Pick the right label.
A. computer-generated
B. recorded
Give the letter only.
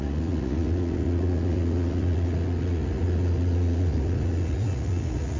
A